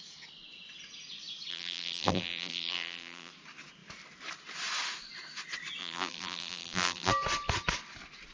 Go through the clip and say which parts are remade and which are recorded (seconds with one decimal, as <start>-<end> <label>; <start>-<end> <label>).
0.0-1.5 recorded; 1.5-3.3 remade; 3.3-5.8 recorded; 5.8-7.1 remade; 7.1-8.3 recorded